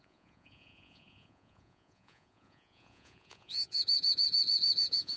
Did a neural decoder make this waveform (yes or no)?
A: yes